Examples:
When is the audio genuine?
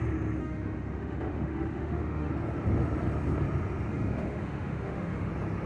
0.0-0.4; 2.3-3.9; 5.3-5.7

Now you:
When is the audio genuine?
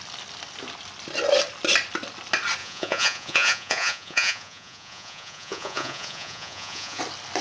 0.0-2.6; 7.0-7.4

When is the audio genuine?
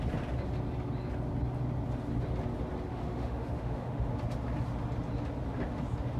0.0-2.9; 4.1-6.2